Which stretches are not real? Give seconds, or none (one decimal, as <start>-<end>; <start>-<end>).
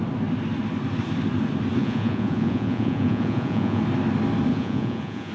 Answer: 1.8-3.8; 4.5-5.3